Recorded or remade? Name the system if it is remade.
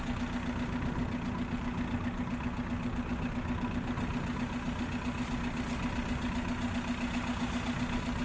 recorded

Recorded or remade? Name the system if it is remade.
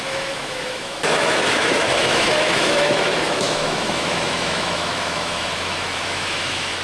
remade, autoencoder, DAC-VAE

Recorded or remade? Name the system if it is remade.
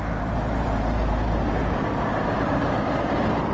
remade, vocoder, BigVGAN v2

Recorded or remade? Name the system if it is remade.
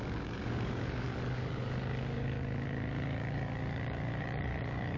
remade, codec, DAC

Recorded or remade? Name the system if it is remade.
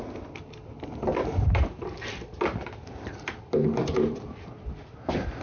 recorded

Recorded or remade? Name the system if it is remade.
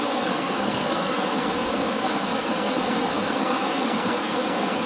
remade, codec, SNAC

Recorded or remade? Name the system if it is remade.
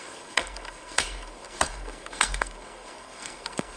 remade, codec, SNAC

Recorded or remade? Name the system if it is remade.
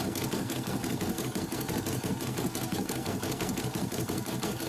remade, codec, SNAC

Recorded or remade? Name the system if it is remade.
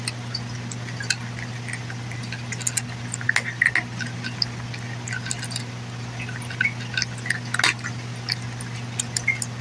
recorded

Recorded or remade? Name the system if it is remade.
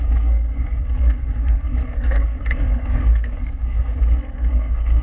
remade, codec, SNAC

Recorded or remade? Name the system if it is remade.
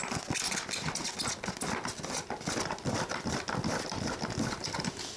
recorded